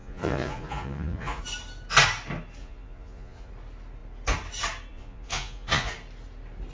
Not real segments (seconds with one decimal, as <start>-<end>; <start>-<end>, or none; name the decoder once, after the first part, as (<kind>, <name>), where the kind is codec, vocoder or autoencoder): 0.0-1.4 (vocoder, Vocos); 2.6-3.5; 4.9-5.9

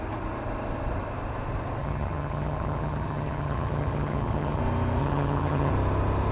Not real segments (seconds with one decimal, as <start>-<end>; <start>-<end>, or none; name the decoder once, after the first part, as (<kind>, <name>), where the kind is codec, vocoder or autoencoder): 1.8-4.6 (vocoder, HiFi-GAN); 5.0-5.7

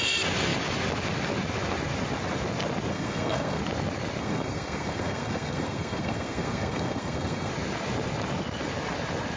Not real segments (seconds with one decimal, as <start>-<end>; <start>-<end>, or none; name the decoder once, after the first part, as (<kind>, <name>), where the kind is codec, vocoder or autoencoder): 2.9-3.6 (codec, SNAC); 4.2-7.5

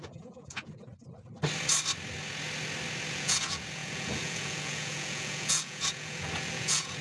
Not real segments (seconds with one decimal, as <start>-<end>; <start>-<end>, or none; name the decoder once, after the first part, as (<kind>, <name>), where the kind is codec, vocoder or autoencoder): 0.0-0.9 (vocoder, Vocos); 3.1-7.0

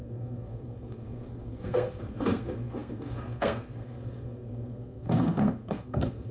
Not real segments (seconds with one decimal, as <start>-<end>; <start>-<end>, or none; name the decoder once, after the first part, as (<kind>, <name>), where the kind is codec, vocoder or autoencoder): 0.0-6.3 (codec, SNAC)